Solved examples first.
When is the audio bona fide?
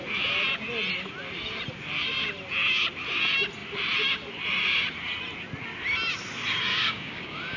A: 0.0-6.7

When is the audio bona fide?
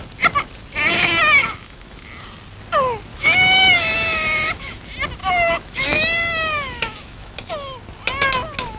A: 0.0-1.4; 2.1-3.1; 4.8-5.2; 7.5-8.8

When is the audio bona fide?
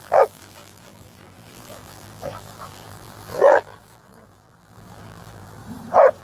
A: 5.6-6.2